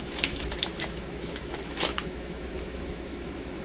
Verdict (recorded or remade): remade